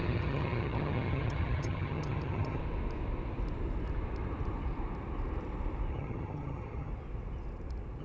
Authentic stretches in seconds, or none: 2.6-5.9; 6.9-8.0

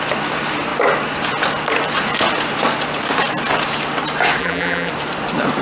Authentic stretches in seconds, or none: 0.0-4.4; 4.9-5.6

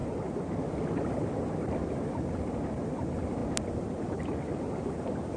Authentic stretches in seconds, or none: 0.0-5.4

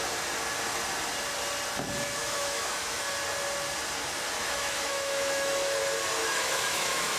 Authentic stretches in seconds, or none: 0.0-2.2; 3.0-4.4; 5.8-6.2

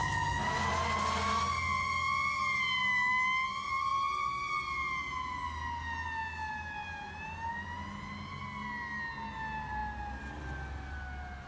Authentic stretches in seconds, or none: 0.0-11.5

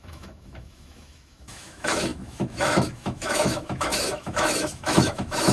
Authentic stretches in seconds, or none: none